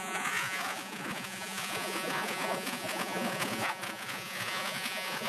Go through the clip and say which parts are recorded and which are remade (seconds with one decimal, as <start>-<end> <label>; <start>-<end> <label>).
0.0-5.3 remade